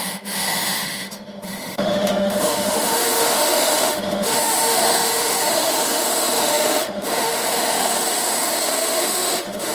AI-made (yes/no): yes